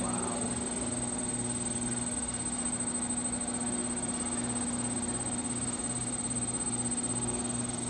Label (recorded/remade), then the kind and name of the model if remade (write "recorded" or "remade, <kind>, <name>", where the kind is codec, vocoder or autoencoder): recorded